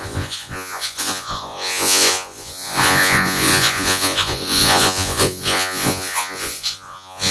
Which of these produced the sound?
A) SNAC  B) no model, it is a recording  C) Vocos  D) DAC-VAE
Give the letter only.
C